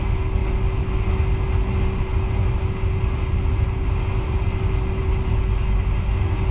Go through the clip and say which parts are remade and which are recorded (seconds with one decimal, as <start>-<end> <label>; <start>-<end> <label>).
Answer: 0.0-6.5 recorded